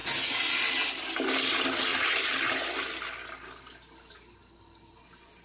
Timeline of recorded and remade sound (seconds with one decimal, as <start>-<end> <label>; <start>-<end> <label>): 0.0-1.9 recorded; 1.9-2.9 remade; 2.9-5.4 recorded